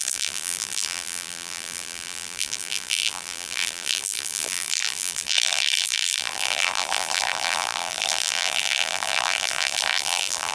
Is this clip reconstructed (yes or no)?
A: yes